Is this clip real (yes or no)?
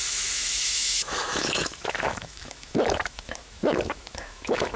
no